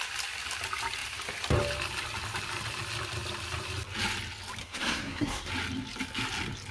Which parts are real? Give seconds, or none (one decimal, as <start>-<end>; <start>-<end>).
0.0-4.6; 5.5-6.7